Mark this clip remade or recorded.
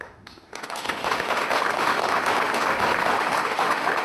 remade